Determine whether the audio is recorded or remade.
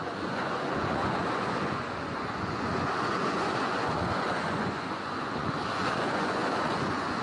remade